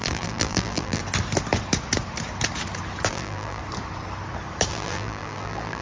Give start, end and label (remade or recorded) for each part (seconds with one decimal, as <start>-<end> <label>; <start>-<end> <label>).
0.0-1.0 remade; 1.0-3.1 recorded; 3.1-3.6 remade; 3.6-4.7 recorded; 4.7-5.8 remade